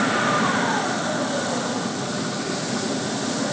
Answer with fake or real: real